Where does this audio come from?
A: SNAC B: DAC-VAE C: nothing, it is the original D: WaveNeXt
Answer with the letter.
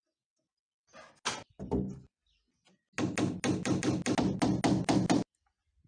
C